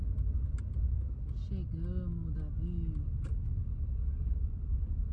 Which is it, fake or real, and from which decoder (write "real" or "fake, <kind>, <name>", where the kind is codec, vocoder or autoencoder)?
real